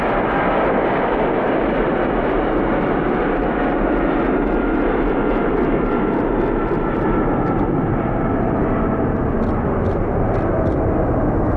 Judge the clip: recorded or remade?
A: recorded